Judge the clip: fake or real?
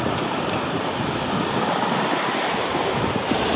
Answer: real